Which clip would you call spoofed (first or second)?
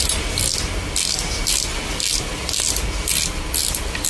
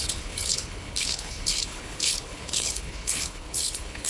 second